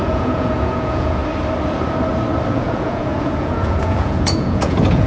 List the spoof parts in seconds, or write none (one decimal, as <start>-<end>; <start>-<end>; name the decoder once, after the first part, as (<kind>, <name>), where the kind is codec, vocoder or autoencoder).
0.0-1.2 (vocoder, Vocos); 2.5-5.1